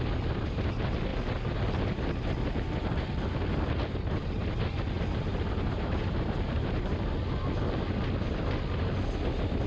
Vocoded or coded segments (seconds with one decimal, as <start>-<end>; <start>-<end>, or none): 5.3-7.0